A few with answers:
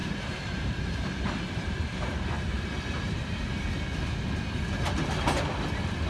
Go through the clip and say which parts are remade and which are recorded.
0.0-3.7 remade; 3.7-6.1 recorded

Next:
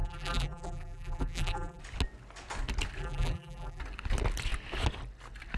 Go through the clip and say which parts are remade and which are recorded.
0.0-1.8 remade; 1.8-3.0 recorded; 3.0-3.8 remade; 3.8-5.6 recorded

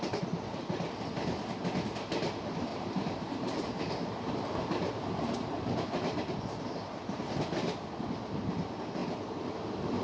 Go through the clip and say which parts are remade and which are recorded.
0.0-2.7 recorded; 2.7-7.2 remade; 7.2-10.0 recorded

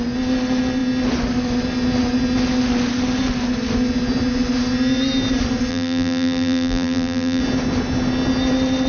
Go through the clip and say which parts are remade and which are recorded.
0.0-5.7 recorded; 5.7-7.4 remade; 7.4-8.9 recorded

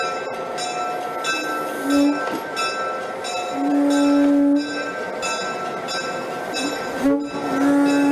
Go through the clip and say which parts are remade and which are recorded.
0.0-8.1 recorded

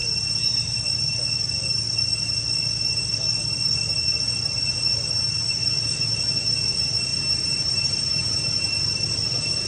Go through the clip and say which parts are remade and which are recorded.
0.0-7.1 recorded; 7.1-8.8 remade; 8.8-9.7 recorded

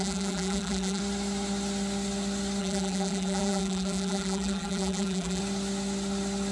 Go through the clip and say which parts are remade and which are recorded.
0.0-1.0 remade; 1.0-2.6 recorded; 2.6-5.4 remade; 5.4-6.5 recorded